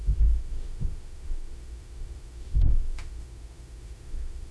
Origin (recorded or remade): remade